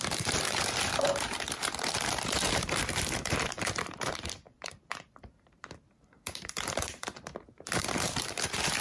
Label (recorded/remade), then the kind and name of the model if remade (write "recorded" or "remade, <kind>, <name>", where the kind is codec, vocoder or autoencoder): remade, vocoder, BigVGAN v2